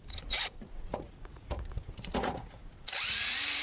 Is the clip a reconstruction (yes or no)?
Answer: yes